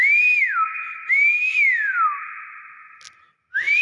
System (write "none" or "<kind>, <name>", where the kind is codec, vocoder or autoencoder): none